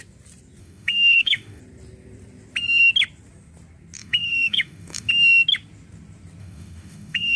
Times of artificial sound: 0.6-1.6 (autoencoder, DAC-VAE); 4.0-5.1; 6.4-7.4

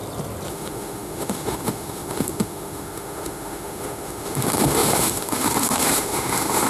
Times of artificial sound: 0.5-6.7 (autoencoder, DAC-VAE)